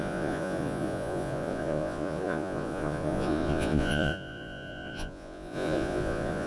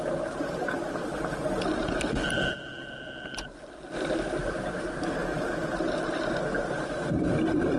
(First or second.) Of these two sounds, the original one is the second